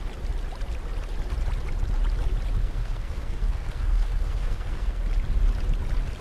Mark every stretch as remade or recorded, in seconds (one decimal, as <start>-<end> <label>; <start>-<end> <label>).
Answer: 0.0-2.6 recorded; 2.6-5.0 remade; 5.0-6.2 recorded